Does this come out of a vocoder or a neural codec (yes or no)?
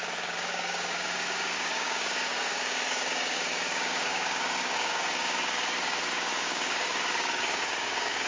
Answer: yes